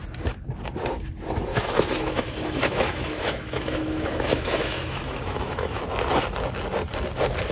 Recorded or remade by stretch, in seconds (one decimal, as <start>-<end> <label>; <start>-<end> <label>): 0.0-1.5 recorded; 1.5-5.8 remade; 5.8-7.5 recorded